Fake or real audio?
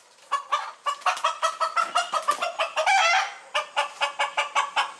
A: real